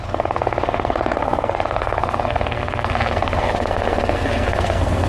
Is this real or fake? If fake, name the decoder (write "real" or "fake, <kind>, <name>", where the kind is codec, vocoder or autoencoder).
fake, codec, SNAC